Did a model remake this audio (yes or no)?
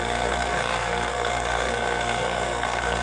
yes